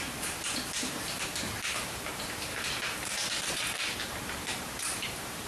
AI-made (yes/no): yes